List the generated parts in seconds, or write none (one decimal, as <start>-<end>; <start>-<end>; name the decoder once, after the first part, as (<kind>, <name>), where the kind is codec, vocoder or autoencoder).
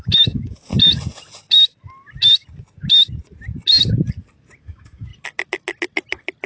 0.0-0.7 (autoencoder, DAC-VAE); 4.6-5.1